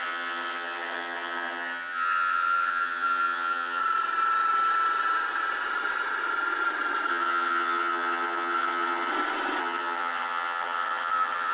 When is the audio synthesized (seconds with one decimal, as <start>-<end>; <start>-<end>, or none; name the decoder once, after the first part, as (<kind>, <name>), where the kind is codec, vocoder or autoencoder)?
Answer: 0.0-3.8 (vocoder, HiFi-GAN); 7.1-9.1; 9.6-11.5